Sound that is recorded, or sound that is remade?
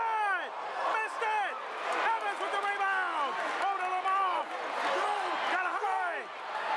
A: recorded